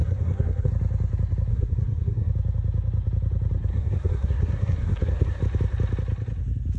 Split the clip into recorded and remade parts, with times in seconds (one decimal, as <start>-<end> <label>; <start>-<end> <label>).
0.0-0.7 remade; 0.7-1.5 recorded; 1.5-2.3 remade; 2.3-3.7 recorded; 3.7-5.4 remade; 5.4-6.8 recorded